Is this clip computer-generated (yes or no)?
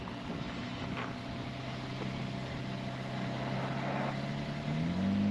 no